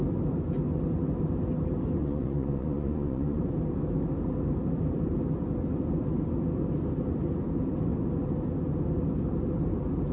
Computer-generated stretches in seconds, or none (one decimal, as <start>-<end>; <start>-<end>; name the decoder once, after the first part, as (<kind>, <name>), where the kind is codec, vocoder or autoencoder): 2.0-3.4 (vocoder, Vocos)